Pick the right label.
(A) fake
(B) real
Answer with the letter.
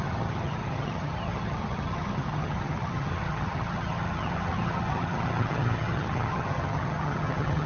A